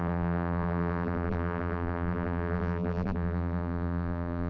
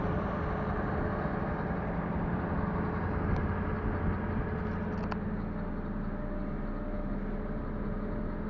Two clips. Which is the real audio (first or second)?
second